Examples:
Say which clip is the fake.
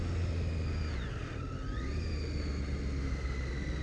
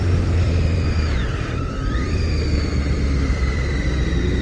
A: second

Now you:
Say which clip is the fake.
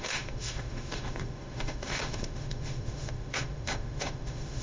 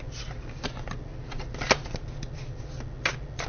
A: first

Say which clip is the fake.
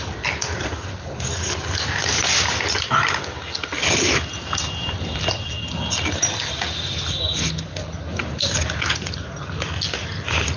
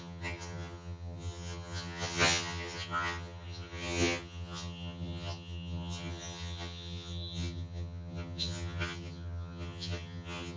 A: second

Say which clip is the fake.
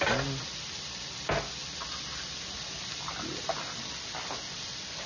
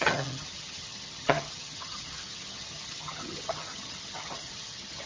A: second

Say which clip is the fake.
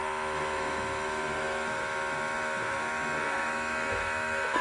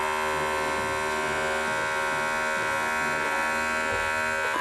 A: first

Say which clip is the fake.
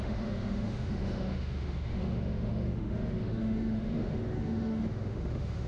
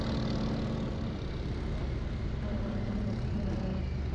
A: first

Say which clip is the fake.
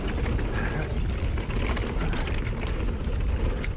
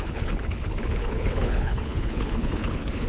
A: second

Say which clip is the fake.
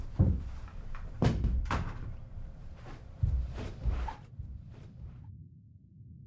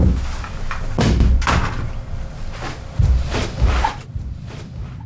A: first